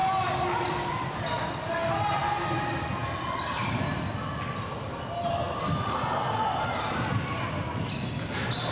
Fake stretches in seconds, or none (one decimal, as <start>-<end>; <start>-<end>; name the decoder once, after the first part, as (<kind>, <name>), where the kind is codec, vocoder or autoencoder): none